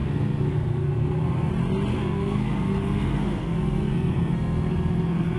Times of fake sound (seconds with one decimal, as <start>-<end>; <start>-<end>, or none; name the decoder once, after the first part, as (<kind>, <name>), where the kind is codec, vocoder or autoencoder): 0.0-1.5 (codec, SNAC); 1.9-5.4

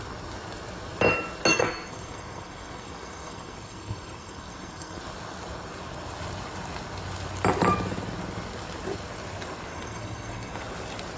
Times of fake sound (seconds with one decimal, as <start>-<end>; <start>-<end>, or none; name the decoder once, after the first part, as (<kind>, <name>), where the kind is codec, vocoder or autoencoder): 1.5-5.0 (codec, SNAC); 9.7-10.6

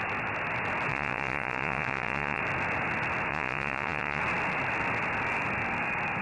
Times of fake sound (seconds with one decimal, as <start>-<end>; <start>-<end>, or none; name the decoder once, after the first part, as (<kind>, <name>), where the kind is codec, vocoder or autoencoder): 0.9-2.4 (vocoder, Vocos); 3.3-4.2

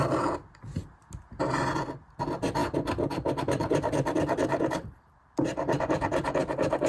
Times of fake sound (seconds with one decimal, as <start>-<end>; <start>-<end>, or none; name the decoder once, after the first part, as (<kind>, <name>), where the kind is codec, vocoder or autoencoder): none

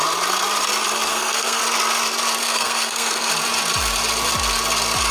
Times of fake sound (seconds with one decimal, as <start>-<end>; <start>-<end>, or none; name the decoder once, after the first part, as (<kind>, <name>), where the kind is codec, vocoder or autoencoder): 1.1-1.6 (codec, SNAC); 2.4-3.3

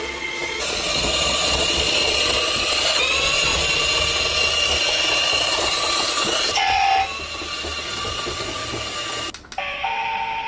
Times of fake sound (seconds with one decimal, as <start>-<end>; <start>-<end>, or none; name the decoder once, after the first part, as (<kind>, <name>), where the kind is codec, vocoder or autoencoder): 0.0-3.5 (vocoder, Vocos); 5.3-6.9; 7.9-8.6; 9.7-10.5